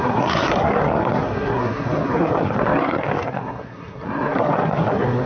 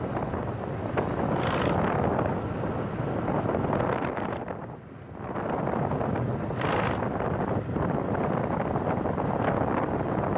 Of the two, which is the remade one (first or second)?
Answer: first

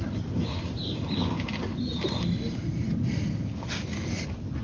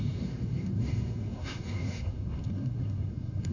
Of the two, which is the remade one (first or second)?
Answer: second